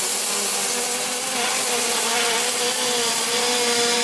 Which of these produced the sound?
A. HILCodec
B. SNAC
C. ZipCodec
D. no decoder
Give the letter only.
D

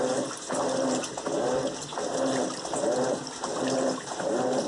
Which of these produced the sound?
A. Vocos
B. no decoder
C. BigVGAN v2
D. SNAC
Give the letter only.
B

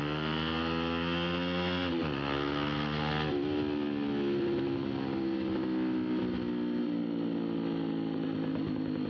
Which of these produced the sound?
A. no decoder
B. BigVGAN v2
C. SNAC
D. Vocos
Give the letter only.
A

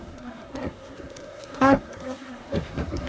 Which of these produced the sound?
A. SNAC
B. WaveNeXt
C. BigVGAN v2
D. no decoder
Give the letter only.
A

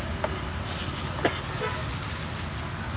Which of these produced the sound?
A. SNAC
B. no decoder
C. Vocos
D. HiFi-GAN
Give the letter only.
B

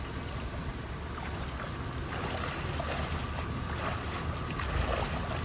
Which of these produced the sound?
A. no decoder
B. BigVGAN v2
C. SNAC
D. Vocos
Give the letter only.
A